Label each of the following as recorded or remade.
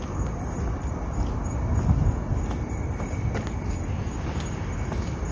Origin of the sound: recorded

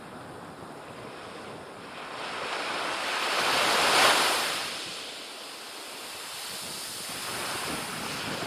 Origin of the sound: recorded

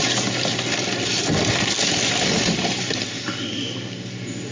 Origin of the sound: recorded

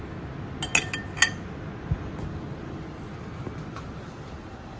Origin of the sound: recorded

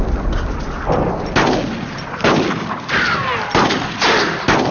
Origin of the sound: recorded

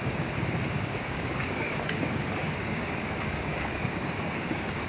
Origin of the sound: remade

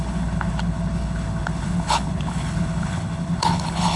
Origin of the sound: remade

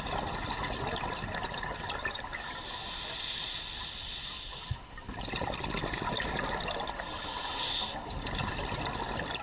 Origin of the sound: recorded